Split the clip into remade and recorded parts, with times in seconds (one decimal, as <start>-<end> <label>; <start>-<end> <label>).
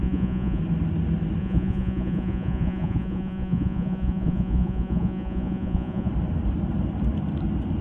0.0-0.6 remade; 0.6-1.4 recorded; 1.4-6.1 remade; 6.1-7.8 recorded